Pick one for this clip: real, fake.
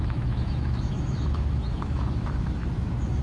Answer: fake